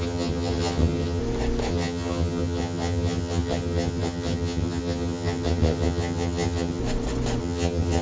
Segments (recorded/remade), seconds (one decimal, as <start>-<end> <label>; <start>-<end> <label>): 0.0-1.2 remade; 1.2-1.7 recorded; 1.7-6.8 remade; 6.8-7.4 recorded; 7.4-8.0 remade